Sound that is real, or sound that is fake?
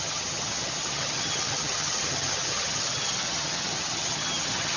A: fake